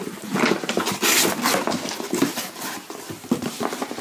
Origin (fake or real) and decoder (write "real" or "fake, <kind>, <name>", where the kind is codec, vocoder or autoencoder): real